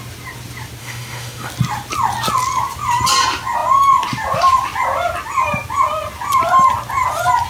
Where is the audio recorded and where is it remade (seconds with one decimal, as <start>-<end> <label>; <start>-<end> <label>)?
0.0-0.8 recorded; 0.8-1.5 remade; 1.5-7.5 recorded